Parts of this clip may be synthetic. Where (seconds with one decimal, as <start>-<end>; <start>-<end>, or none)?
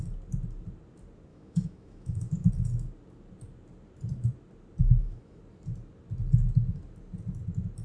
1.3-2.5; 4.8-5.4